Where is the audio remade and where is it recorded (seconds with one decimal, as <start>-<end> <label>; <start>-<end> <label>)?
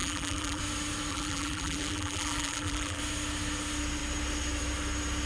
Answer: 0.0-0.6 remade; 0.6-1.1 recorded; 1.1-3.0 remade; 3.0-5.3 recorded